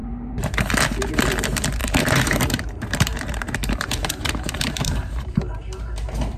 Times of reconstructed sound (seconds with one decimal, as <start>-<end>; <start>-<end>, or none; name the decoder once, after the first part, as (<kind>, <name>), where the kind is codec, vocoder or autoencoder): 0.0-0.7 (vocoder, BigVGAN v2); 1.8-5.4